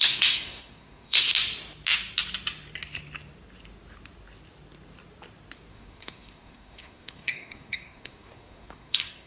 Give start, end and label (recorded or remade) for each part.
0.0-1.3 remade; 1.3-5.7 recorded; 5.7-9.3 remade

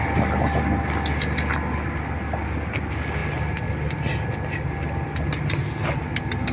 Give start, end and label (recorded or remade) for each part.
0.0-6.5 recorded

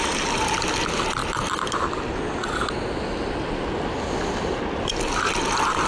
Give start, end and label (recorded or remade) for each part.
0.0-5.9 recorded